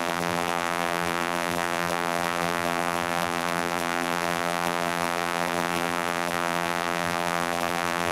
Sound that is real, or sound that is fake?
fake